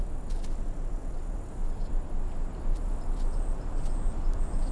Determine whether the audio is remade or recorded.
recorded